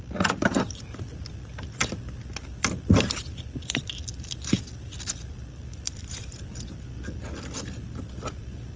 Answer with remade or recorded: recorded